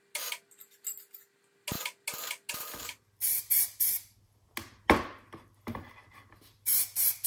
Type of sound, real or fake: real